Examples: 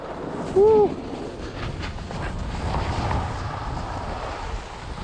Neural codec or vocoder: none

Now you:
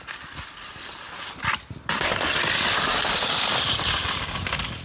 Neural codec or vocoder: none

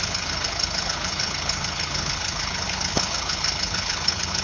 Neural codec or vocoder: codec, HILCodec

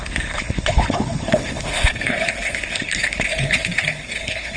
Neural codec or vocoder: codec, HILCodec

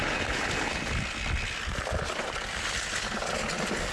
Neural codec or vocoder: none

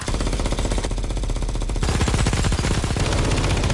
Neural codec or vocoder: none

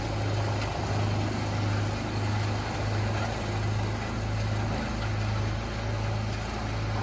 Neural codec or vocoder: none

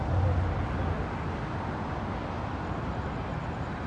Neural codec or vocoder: none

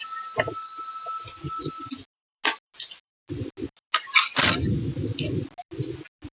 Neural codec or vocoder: none